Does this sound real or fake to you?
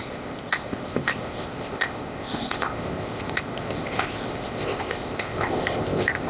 fake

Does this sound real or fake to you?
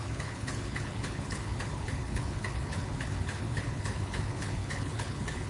fake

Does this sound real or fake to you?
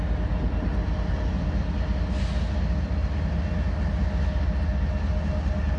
real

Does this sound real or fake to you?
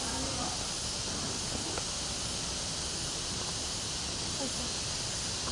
real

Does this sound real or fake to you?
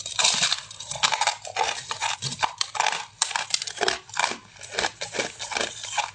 real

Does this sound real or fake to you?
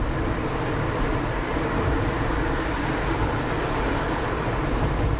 fake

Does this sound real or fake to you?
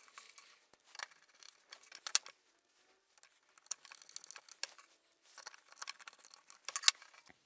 real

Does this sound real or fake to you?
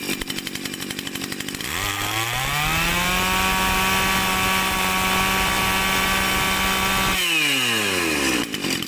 real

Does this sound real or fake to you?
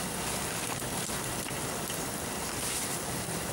real